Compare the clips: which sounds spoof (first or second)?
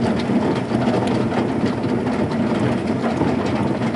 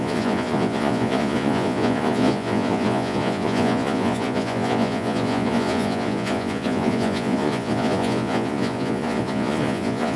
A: second